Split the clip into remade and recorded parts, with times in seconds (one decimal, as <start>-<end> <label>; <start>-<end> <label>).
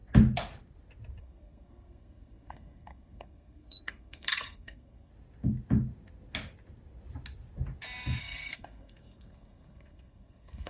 0.0-1.2 recorded; 1.2-5.1 remade; 5.1-8.2 recorded; 8.2-10.7 remade